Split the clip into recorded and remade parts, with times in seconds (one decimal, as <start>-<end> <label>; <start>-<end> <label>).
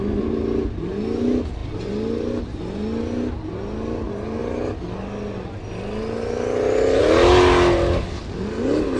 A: 0.0-9.0 recorded